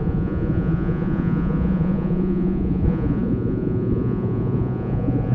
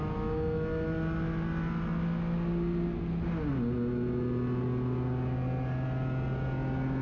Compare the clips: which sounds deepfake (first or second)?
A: first